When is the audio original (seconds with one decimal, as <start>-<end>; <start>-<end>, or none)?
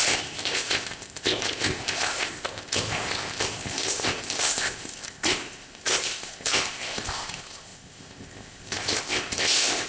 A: none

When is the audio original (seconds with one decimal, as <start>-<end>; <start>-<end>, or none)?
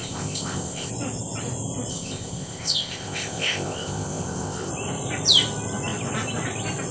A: 0.9-1.9; 4.7-6.9